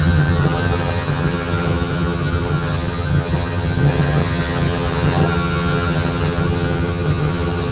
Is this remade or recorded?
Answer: remade